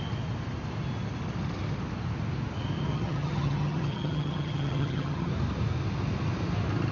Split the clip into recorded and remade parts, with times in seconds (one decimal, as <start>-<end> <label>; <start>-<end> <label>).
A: 0.0-2.9 recorded; 2.9-5.3 remade; 5.3-6.9 recorded